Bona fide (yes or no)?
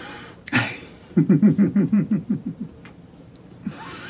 no